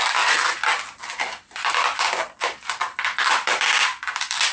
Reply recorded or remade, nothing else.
remade